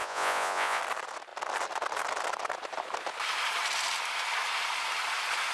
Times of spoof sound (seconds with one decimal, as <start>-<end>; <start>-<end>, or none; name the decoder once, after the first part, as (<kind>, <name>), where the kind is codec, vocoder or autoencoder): 0.0-0.8 (vocoder, Vocos)